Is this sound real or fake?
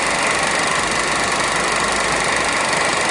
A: real